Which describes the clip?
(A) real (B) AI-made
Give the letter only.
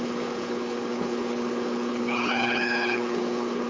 B